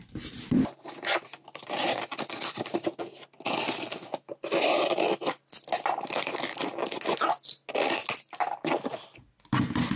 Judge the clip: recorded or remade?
recorded